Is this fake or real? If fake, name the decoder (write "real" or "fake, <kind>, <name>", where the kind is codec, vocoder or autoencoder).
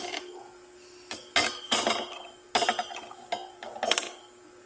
real